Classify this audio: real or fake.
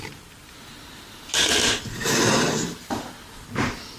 real